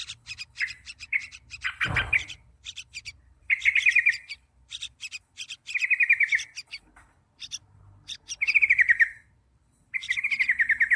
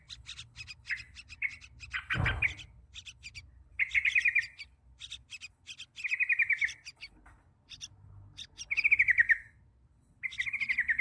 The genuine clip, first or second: second